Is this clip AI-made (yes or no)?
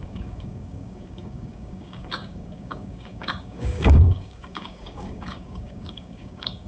yes